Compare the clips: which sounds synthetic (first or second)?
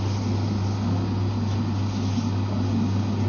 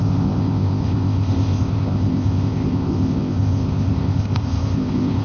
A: second